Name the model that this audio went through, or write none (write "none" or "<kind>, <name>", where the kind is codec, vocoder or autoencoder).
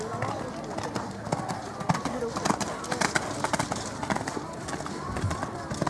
none